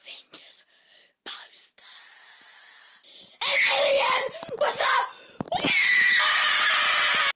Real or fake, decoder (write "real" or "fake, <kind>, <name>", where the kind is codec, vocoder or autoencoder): real